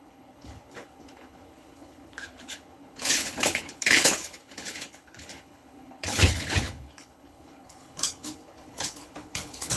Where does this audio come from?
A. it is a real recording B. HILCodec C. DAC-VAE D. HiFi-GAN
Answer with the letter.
B